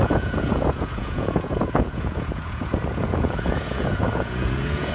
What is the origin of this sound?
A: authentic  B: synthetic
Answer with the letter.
B